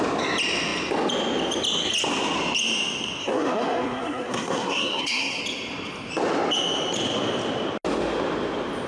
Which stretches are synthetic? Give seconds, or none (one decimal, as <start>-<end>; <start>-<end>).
3.2-5.4

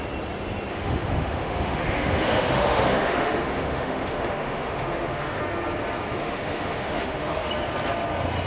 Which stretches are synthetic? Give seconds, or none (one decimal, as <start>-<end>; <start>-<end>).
0.7-5.4; 6.2-7.5

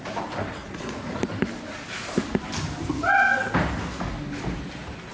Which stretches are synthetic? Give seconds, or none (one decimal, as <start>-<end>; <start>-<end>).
0.6-1.2

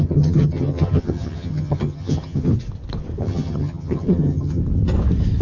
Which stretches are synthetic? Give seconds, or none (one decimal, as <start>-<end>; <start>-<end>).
0.0-2.5; 3.2-4.6

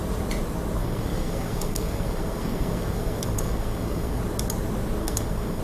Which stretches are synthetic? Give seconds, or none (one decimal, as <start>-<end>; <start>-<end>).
0.8-4.2; 5.0-5.6

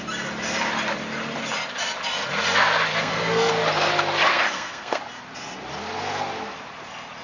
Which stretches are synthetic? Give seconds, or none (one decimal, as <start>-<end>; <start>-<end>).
2.9-3.5; 4.3-5.0

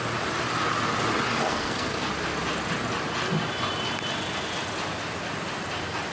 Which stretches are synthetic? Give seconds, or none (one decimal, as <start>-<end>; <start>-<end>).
1.4-2.1